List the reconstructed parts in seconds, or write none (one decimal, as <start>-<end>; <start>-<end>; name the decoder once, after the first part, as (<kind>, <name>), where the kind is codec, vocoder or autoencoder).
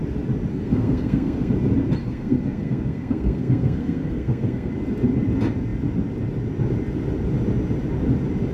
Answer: 0.5-1.5 (codec, SNAC); 2.0-4.7